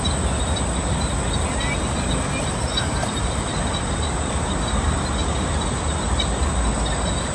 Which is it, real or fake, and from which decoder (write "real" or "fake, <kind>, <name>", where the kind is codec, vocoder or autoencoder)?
real